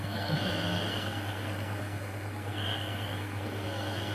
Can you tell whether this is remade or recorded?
remade